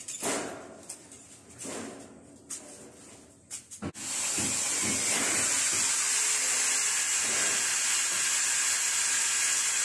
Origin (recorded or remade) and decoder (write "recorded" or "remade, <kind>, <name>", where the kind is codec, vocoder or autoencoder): recorded